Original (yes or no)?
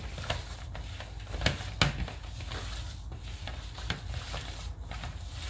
yes